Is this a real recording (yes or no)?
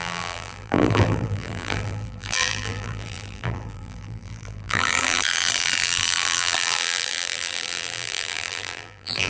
no